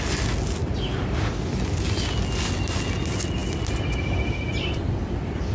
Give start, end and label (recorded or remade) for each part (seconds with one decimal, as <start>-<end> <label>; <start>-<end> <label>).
0.0-0.6 recorded; 0.6-1.3 remade; 1.3-5.5 recorded